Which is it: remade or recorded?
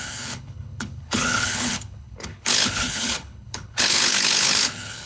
remade